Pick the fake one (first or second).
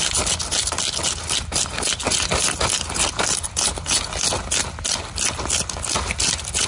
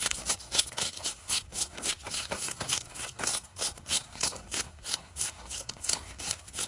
second